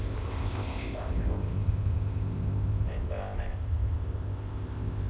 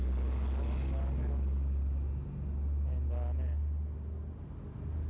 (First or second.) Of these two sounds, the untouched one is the second